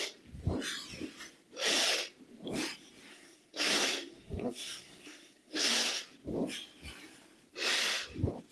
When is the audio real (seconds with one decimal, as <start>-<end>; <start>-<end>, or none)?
0.0-3.1; 6.0-8.5

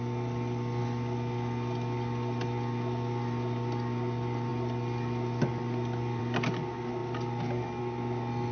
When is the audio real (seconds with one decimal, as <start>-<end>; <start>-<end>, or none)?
0.0-8.5

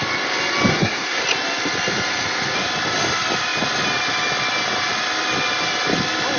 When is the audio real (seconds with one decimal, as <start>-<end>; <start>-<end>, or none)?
0.0-0.7; 1.2-6.4

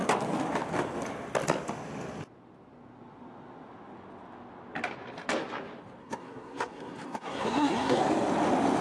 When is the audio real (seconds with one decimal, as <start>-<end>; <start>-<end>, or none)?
0.0-6.0; 8.0-8.8